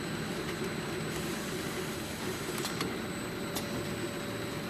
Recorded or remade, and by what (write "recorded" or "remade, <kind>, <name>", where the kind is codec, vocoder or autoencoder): recorded